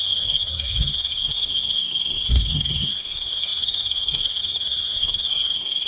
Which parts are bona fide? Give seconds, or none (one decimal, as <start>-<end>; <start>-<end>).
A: none

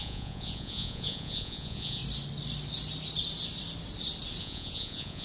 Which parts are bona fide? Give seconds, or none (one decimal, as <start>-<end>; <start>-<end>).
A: 2.0-4.4

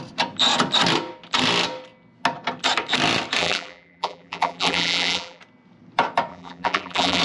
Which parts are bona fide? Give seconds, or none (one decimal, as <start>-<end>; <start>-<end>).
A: 0.0-3.4; 5.4-6.3

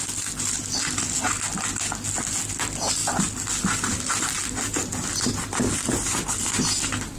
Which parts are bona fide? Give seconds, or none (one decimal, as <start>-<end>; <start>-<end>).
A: 0.0-7.2

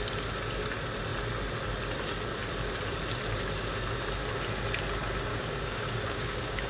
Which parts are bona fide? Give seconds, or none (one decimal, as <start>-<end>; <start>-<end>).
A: 0.0-5.3

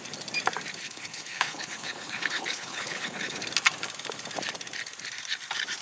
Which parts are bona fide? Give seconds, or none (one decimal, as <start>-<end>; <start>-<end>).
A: 0.0-0.8; 3.4-5.8

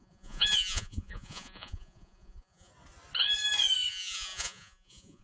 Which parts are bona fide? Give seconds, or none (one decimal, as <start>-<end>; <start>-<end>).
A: 2.7-3.9